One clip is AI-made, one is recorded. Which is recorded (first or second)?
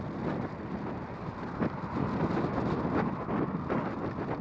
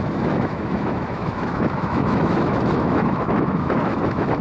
first